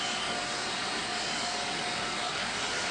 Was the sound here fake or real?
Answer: fake